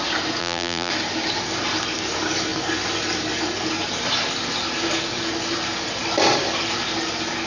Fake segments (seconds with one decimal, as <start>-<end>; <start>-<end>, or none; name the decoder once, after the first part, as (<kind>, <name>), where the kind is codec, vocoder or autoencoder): 0.4-0.9 (vocoder, BigVGAN v2)